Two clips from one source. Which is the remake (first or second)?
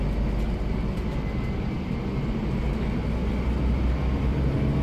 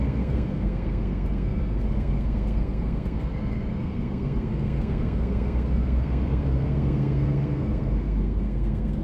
second